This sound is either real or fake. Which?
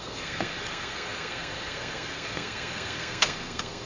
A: fake